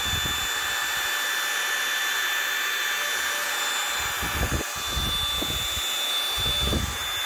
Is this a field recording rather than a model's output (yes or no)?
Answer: yes